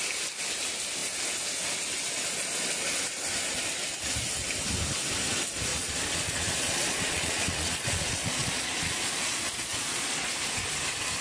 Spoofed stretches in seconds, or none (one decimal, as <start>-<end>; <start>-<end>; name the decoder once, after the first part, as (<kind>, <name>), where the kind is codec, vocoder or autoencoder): 5.7-10.3 (vocoder, Vocos)